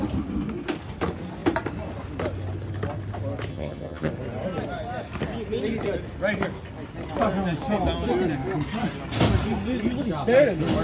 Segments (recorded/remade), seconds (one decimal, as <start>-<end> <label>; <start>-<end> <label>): 0.0-3.5 recorded; 3.5-4.1 remade; 4.1-10.8 recorded